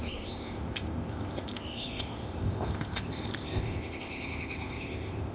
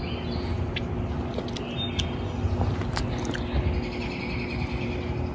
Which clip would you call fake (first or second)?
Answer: first